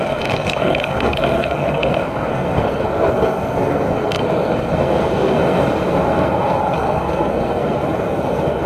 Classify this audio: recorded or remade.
remade